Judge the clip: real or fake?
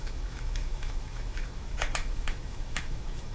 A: fake